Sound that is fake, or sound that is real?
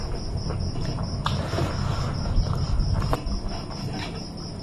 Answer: real